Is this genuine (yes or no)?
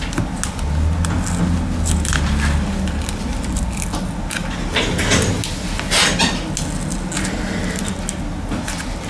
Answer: yes